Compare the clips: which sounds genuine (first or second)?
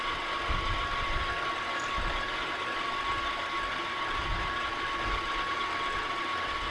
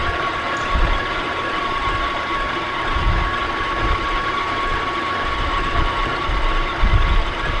first